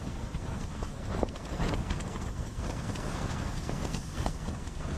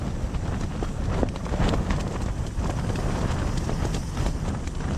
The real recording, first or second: second